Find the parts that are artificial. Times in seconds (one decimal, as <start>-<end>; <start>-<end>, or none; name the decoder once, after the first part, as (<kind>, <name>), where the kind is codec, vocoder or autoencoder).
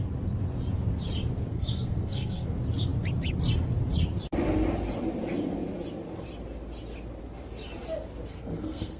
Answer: 1.5-2.5 (codec, SNAC); 8.3-9.0